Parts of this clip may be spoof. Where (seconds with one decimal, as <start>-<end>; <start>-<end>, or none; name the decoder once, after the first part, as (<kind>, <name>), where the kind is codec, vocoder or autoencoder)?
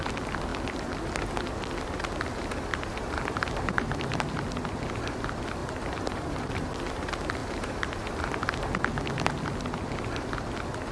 2.7-4.2 (vocoder, BigVGAN v2); 5.6-6.5; 7.4-8.1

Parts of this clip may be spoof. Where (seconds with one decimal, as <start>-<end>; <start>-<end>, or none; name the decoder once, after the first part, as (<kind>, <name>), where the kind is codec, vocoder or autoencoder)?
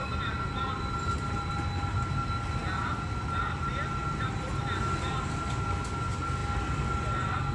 none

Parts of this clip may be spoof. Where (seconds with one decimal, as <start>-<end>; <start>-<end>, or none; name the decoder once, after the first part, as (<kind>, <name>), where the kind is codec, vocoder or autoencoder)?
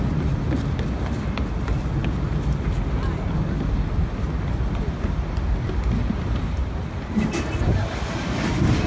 none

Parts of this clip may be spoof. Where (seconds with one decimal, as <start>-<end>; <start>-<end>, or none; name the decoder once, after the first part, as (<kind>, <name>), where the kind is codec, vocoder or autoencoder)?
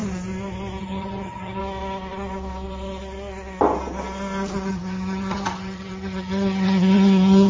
0.8-1.6 (vocoder, HiFi-GAN); 4.7-7.5